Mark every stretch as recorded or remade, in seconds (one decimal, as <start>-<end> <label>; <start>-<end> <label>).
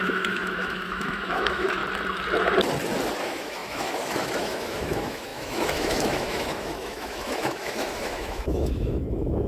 0.0-1.8 remade; 1.8-3.2 recorded; 3.2-9.5 remade